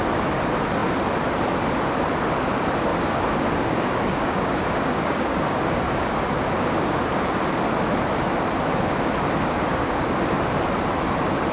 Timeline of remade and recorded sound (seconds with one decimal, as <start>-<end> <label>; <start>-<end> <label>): 0.0-2.9 recorded; 2.9-7.0 remade; 7.0-9.7 recorded; 9.7-10.4 remade; 10.4-11.5 recorded